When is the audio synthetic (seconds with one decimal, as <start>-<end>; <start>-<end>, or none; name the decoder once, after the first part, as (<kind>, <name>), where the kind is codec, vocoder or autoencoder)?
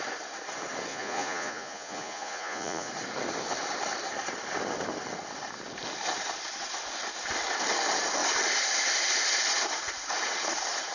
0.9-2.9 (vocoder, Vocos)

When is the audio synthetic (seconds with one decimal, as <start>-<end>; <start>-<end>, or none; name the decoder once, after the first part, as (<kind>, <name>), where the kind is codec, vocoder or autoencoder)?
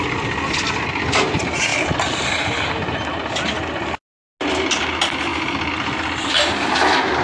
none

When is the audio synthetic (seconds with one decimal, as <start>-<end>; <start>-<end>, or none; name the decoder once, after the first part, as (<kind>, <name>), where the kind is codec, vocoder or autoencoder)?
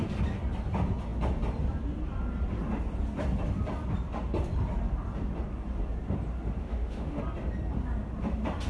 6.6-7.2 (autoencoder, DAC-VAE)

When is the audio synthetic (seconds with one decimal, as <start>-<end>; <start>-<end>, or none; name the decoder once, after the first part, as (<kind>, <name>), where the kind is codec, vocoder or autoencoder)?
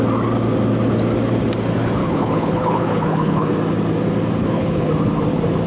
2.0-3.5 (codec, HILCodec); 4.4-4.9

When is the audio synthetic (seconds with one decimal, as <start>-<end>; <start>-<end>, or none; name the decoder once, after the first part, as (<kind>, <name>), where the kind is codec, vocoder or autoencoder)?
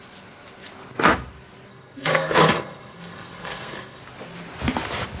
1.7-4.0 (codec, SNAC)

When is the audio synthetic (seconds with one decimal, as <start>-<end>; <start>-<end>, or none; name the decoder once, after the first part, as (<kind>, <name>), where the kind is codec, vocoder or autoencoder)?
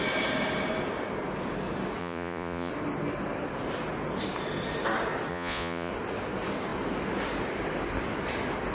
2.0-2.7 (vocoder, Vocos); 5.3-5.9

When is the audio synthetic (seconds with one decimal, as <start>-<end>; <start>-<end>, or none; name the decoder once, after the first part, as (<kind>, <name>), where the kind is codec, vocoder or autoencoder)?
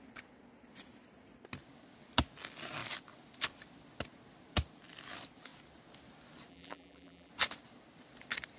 6.5-7.3 (vocoder, BigVGAN v2)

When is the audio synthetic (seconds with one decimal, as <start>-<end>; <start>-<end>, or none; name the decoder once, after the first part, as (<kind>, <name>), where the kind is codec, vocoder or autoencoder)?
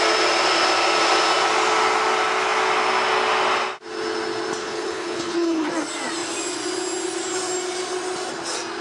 4.6-5.7 (codec, HILCodec)